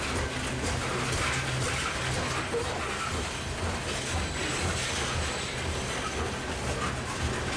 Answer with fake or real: real